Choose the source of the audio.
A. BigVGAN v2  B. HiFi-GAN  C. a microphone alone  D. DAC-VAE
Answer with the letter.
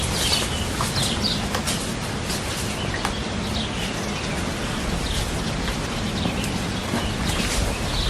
C